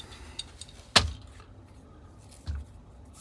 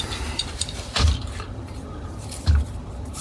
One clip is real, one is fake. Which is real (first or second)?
first